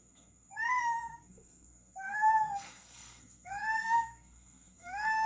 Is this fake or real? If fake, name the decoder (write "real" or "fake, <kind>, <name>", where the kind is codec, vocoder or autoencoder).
fake, codec, SNAC